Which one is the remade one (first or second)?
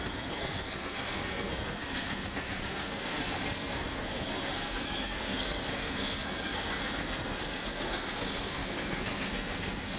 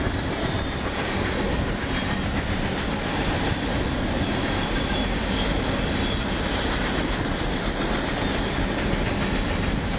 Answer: first